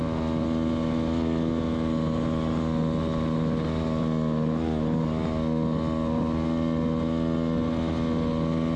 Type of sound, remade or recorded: recorded